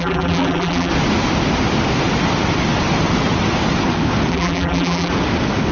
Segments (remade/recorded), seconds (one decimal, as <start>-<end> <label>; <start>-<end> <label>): 0.0-0.9 remade; 0.9-4.3 recorded; 4.3-5.1 remade; 5.1-5.7 recorded